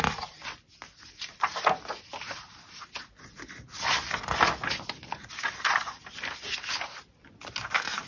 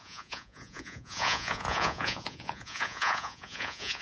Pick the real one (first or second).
first